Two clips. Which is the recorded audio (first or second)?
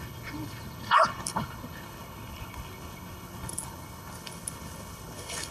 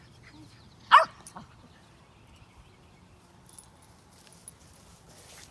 second